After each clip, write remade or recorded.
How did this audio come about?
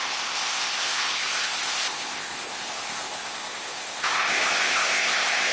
remade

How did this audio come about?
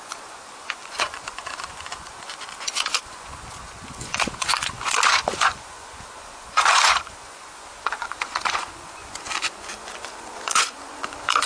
remade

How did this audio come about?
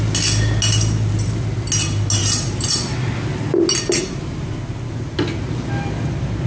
recorded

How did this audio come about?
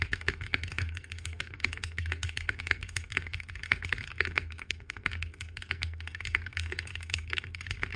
remade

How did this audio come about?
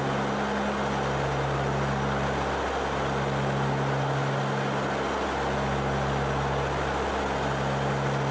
recorded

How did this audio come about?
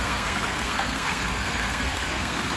remade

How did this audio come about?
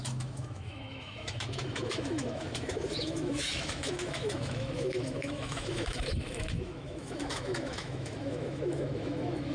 remade